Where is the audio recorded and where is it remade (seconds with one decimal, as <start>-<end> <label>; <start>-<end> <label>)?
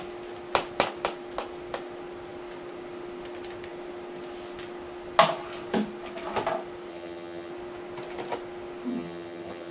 0.0-6.9 recorded; 6.9-7.5 remade; 7.5-8.9 recorded; 8.9-9.7 remade